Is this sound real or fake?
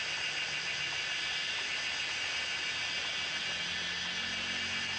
real